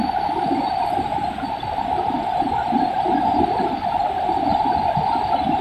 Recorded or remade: recorded